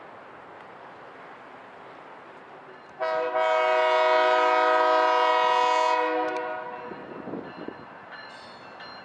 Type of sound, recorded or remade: recorded